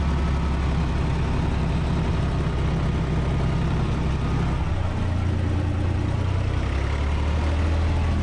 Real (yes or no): yes